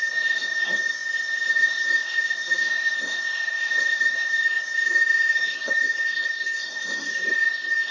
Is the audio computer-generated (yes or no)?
yes